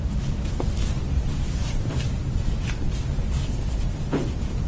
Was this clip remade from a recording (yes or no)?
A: yes